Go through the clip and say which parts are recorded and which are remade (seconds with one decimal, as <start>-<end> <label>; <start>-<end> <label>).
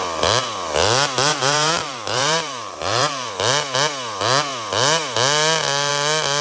0.0-1.3 recorded; 1.3-3.3 remade; 3.3-6.4 recorded